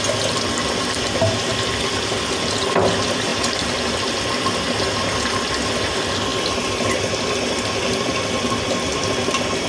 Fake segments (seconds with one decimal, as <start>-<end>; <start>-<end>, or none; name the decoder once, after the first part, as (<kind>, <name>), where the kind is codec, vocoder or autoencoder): 3.3-4.3 (vocoder, BigVGAN v2)